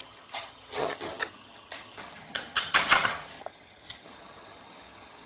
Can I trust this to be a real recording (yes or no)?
no